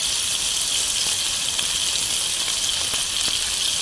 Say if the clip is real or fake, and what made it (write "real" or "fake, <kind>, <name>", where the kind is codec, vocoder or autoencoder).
real